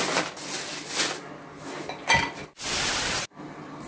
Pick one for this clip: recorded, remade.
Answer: recorded